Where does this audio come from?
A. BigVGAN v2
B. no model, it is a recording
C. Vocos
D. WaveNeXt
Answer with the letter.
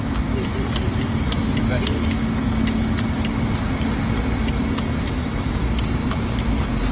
B